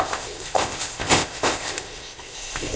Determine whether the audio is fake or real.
fake